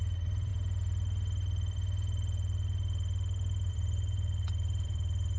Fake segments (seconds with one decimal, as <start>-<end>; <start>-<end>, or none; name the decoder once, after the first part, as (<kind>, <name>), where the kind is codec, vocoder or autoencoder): 0.0-0.5 (vocoder, BigVGAN v2); 3.7-5.4